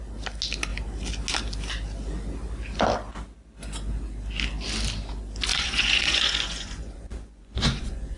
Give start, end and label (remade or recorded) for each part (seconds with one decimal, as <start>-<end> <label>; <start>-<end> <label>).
0.0-5.5 recorded; 5.5-8.2 remade